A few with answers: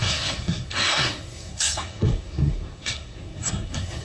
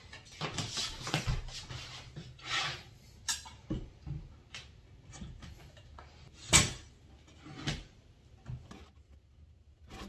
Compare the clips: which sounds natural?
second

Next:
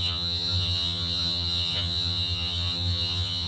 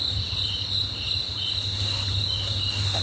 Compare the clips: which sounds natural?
second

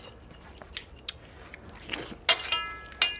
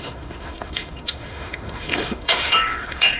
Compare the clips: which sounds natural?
first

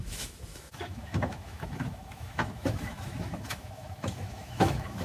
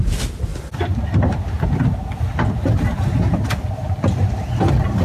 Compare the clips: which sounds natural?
second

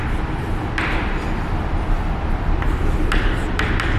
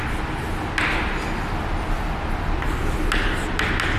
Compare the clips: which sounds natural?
second